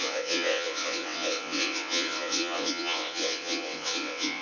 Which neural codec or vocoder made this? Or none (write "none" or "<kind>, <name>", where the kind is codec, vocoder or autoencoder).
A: vocoder, WaveNeXt